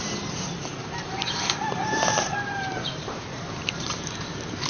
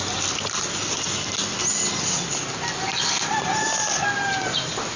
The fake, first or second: first